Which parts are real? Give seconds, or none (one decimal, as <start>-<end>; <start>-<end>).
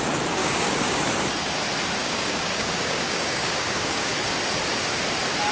0.0-0.4; 1.0-2.0; 4.1-5.5